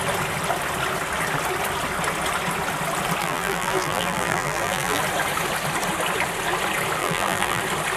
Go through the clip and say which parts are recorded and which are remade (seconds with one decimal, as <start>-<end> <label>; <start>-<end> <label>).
0.0-3.2 recorded; 3.2-5.0 remade; 5.0-7.0 recorded; 7.0-7.6 remade; 7.6-8.0 recorded